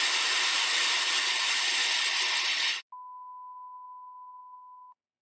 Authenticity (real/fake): real